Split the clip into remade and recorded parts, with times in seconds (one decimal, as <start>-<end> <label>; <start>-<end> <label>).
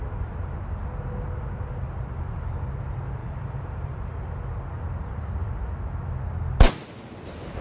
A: 0.0-3.2 recorded; 3.2-4.1 remade; 4.1-7.6 recorded